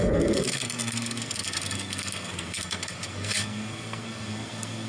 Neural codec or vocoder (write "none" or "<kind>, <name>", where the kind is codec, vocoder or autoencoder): codec, SNAC